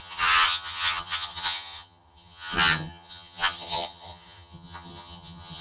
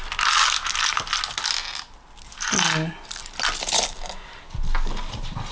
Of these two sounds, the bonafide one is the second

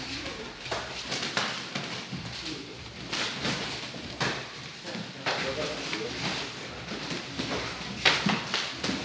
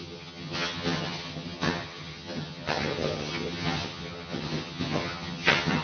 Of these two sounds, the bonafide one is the first